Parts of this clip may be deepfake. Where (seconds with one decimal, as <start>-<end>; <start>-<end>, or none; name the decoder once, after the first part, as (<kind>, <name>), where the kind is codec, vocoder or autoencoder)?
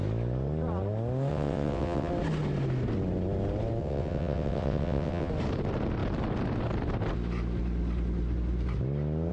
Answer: 1.3-2.1 (vocoder, WaveNeXt); 3.8-5.3